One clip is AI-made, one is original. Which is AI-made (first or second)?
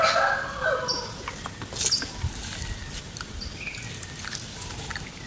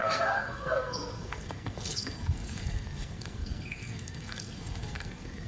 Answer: second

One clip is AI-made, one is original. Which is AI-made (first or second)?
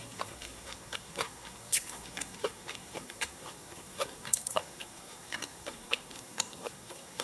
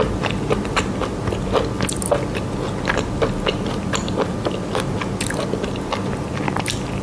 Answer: first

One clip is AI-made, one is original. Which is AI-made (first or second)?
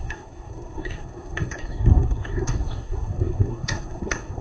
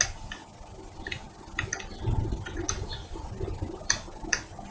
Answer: first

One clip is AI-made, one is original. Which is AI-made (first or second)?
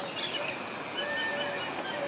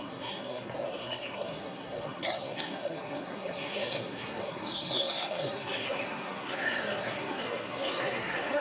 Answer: second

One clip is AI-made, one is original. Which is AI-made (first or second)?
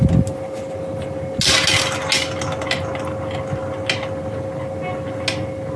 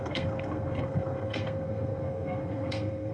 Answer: second